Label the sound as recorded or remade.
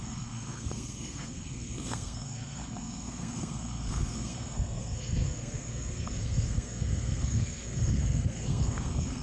remade